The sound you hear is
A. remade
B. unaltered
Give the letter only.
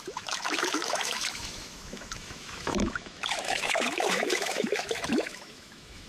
A